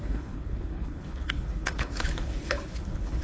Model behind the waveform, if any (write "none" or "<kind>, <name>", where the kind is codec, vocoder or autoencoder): codec, HILCodec